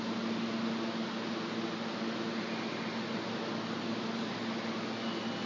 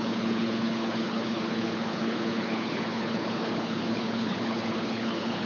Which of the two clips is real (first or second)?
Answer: first